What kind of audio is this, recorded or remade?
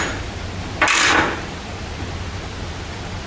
recorded